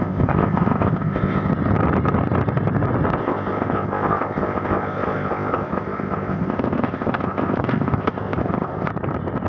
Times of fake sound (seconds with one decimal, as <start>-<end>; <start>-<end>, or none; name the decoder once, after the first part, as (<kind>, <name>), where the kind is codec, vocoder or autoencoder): 0.0-1.5 (codec, ZipCodec); 3.2-8.9